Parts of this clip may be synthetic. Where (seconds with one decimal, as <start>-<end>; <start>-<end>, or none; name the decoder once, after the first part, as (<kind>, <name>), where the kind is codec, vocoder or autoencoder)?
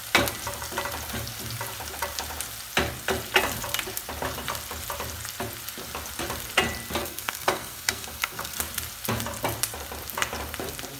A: 7.0-8.6 (codec, SNAC)